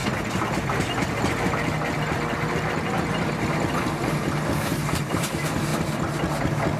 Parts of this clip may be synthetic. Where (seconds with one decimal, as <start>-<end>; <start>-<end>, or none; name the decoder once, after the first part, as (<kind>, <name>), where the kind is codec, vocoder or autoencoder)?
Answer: 4.7-5.3 (vocoder, BigVGAN v2)